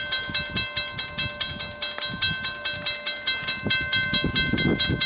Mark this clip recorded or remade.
recorded